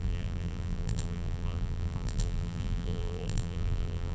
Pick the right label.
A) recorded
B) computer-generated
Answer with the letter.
B